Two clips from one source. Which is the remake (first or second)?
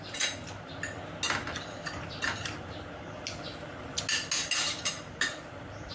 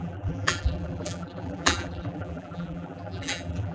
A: second